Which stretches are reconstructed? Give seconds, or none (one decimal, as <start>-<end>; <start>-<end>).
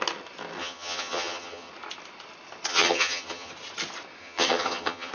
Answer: 0.6-1.7; 2.7-3.5; 4.2-5.1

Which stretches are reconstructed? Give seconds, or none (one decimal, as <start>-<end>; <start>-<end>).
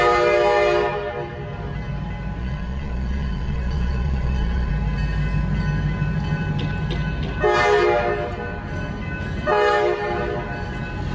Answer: 2.4-4.7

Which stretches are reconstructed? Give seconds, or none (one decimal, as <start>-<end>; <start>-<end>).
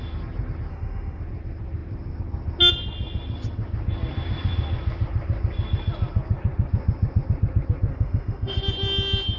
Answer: 0.7-1.2; 7.9-8.6